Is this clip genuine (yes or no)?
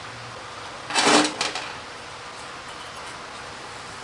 yes